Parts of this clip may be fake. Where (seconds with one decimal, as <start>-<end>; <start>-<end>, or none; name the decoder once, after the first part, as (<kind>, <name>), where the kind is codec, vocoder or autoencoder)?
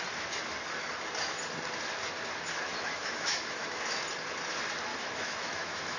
2.7-4.0 (autoencoder, DAC-VAE); 4.9-6.0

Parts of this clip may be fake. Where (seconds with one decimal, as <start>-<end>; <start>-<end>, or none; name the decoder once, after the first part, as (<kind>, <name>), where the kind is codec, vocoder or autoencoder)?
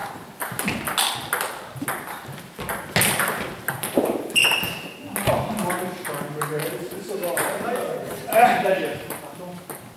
6.6-9.2 (vocoder, BigVGAN v2)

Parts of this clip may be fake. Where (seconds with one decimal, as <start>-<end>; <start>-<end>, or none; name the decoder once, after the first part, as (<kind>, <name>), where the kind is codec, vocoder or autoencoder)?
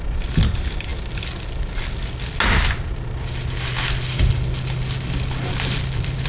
none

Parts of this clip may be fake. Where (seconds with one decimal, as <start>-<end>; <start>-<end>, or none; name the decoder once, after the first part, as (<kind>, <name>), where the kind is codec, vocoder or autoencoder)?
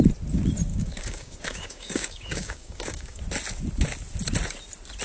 0.7-3.2 (codec, DAC)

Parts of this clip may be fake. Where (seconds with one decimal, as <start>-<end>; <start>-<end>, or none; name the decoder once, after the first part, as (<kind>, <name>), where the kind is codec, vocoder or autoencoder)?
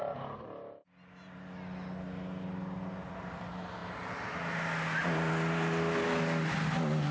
none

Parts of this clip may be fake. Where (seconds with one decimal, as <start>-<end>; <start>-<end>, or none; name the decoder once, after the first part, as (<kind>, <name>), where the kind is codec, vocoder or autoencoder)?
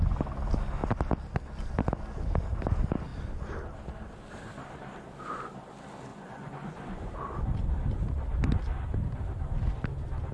6.1-7.1 (vocoder, Vocos)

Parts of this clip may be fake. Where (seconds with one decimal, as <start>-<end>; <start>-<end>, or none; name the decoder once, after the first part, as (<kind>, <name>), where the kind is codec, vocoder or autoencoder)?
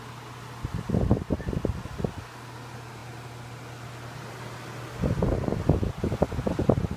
none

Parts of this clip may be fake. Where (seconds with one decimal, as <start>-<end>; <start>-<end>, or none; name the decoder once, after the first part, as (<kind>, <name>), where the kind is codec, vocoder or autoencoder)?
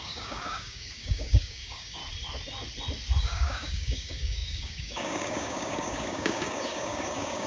0.0-2.0 (codec, DAC); 3.2-7.5